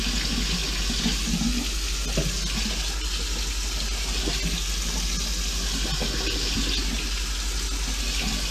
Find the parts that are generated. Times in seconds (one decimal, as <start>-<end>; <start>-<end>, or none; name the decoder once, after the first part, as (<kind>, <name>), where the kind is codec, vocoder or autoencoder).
none